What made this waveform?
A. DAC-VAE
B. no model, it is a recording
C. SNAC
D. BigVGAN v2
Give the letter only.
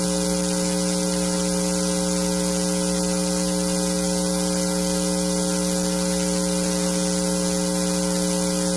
B